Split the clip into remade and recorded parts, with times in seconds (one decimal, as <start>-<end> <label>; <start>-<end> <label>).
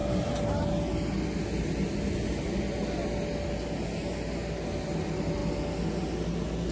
0.0-6.7 recorded